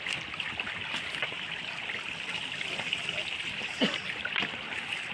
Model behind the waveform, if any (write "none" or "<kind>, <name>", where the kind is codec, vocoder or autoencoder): none